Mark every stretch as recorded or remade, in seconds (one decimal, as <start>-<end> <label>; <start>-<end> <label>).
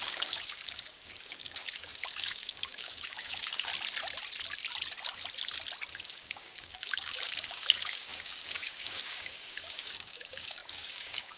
0.0-3.7 remade; 3.7-6.1 recorded; 6.1-11.4 remade